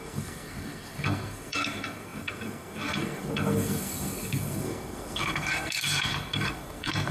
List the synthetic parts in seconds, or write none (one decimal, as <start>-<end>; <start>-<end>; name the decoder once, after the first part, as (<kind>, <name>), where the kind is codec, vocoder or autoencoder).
0.0-7.1 (codec, SNAC)